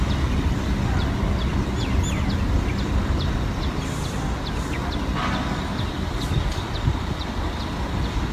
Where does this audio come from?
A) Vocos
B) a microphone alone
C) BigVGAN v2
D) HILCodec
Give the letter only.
B